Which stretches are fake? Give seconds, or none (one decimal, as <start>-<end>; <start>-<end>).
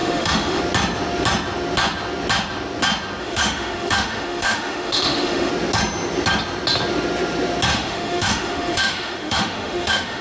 0.0-0.6; 3.2-5.5; 7.7-10.2